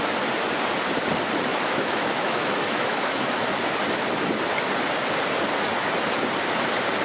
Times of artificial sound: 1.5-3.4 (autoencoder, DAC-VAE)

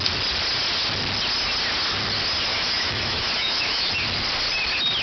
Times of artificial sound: 2.5-3.9 (autoencoder, DAC-VAE)